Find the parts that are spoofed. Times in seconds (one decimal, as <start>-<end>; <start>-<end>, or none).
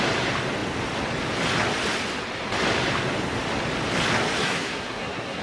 4.4-5.4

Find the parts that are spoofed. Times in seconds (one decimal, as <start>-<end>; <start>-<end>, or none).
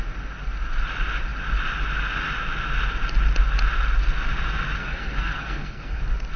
4.8-6.0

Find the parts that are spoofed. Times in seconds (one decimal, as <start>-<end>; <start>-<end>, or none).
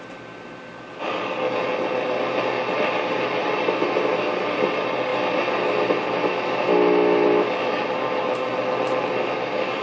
none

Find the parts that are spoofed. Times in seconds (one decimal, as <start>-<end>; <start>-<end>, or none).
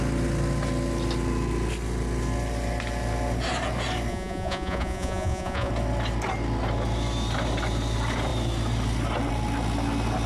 4.1-5.7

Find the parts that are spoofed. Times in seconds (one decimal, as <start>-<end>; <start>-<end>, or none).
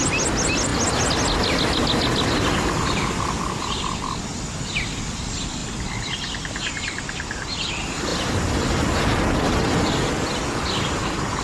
none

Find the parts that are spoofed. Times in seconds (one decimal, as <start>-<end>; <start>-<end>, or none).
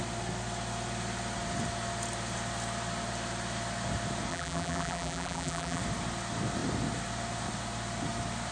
4.3-5.8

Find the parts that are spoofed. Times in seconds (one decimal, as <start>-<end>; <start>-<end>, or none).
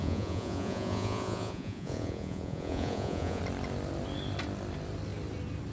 0.0-3.4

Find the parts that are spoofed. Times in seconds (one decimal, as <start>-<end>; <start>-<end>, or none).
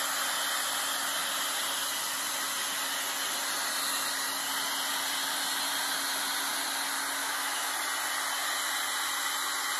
7.2-7.7